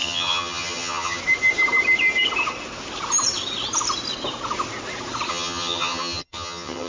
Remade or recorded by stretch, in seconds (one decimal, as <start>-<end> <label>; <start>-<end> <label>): 0.0-1.2 remade; 1.2-5.3 recorded; 5.3-6.9 remade